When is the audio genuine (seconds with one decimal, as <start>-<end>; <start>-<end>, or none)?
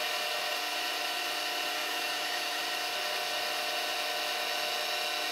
0.0-1.8; 2.6-5.3